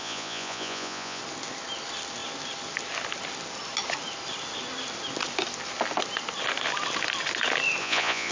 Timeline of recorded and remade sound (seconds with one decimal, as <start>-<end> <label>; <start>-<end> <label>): 0.0-1.2 remade; 1.2-7.8 recorded; 7.8-8.3 remade

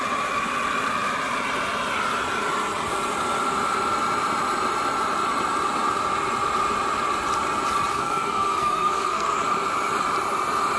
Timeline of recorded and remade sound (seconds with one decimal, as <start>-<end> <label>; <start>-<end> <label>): 0.0-7.9 recorded; 7.9-9.4 remade; 9.4-10.8 recorded